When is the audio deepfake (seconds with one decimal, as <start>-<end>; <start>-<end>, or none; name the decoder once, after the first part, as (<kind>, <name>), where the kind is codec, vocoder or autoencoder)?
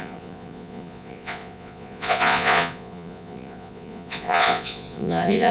0.0-5.5 (vocoder, Vocos)